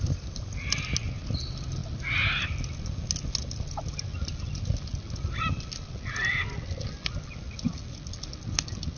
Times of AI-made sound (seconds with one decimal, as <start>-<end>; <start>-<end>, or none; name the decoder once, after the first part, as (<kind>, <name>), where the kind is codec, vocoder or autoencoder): none